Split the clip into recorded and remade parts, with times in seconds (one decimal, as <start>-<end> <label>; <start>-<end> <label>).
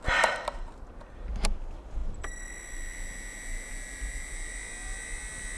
0.0-5.6 recorded